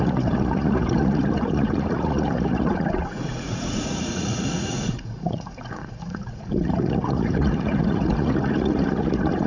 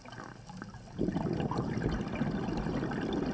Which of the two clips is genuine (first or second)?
second